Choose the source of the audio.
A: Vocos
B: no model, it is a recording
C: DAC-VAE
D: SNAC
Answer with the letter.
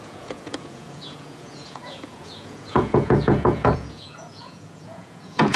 A